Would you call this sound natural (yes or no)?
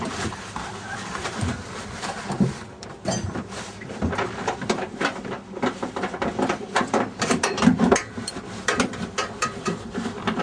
no